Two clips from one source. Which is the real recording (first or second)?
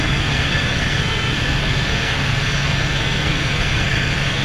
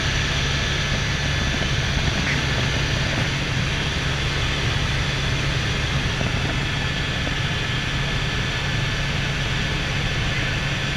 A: second